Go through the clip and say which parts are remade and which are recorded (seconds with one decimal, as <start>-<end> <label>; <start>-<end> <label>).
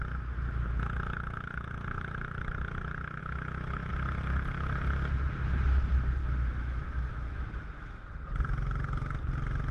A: 0.0-3.2 recorded; 3.2-3.9 remade; 3.9-6.2 recorded; 6.2-8.1 remade; 8.1-9.7 recorded